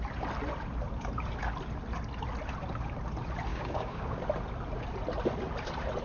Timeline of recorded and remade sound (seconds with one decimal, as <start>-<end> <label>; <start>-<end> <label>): 0.0-3.5 recorded; 3.5-4.2 remade; 4.2-6.0 recorded